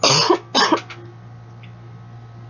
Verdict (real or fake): real